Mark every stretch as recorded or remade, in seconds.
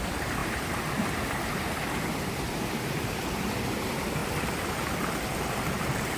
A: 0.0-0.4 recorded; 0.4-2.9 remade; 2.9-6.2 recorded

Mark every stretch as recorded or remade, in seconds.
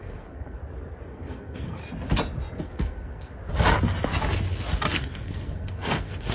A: 0.0-0.6 remade; 0.6-1.1 recorded; 1.1-1.8 remade; 1.8-2.6 recorded; 2.6-3.3 remade; 3.3-4.9 recorded; 4.9-6.3 remade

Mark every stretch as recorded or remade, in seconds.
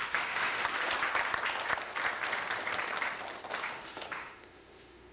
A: 0.0-0.6 remade; 0.6-3.7 recorded; 3.7-5.1 remade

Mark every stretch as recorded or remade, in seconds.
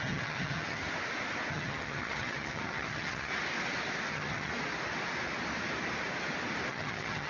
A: 0.0-0.8 remade; 0.8-1.5 recorded; 1.5-3.3 remade; 3.3-4.1 recorded; 4.1-4.5 remade; 4.5-6.7 recorded; 6.7-7.3 remade